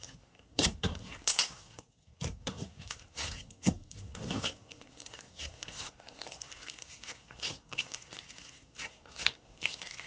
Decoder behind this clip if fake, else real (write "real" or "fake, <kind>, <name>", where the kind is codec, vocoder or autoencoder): fake, codec, SNAC